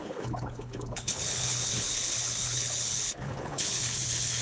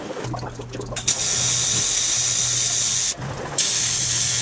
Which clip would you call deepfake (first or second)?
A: first